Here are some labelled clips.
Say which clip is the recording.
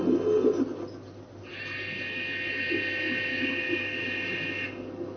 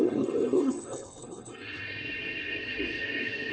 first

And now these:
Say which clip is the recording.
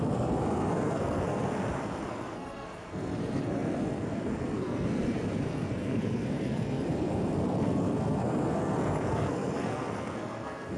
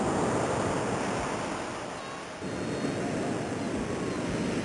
second